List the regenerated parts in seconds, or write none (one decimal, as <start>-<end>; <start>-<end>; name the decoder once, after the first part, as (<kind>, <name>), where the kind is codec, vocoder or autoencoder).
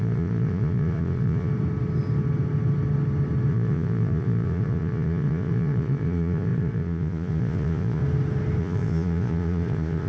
0.0-1.5 (vocoder, Vocos); 3.5-8.0; 8.6-10.1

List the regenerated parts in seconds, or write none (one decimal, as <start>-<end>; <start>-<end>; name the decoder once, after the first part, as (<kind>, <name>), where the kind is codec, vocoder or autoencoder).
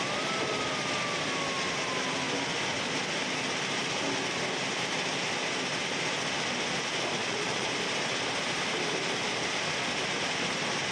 7.2-7.7 (vocoder, Vocos)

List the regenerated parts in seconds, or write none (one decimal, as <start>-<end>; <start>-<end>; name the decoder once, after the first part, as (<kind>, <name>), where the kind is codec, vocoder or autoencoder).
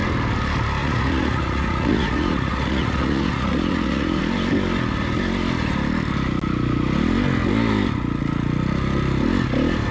0.8-4.2 (vocoder, Vocos)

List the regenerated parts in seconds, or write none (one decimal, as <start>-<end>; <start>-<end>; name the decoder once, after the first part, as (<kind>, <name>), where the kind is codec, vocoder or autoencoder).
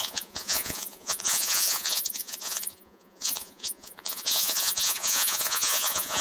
0.0-6.2 (vocoder, Vocos)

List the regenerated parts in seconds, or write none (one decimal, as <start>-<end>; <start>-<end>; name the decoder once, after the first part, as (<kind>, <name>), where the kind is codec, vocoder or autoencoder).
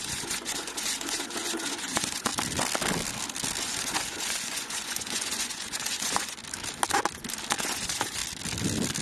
0.0-2.3 (vocoder, Vocos); 3.6-6.4; 7.6-8.2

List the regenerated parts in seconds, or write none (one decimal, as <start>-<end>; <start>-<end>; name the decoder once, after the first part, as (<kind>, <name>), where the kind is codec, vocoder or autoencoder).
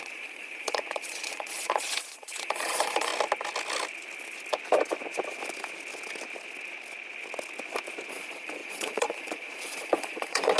0.0-3.1 (vocoder, Vocos); 8.1-10.6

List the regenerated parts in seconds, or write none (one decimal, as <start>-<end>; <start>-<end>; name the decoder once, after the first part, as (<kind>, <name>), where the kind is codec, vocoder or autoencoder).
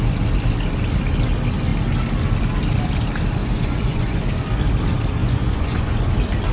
3.4-4.2 (vocoder, Vocos); 5.2-6.1